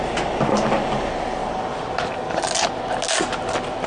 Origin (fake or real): real